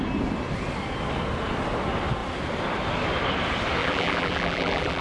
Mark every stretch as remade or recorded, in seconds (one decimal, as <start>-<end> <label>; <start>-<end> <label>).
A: 0.0-3.8 recorded; 3.8-5.0 remade